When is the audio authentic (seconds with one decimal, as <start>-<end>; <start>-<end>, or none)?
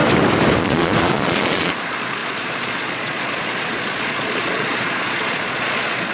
0.0-0.6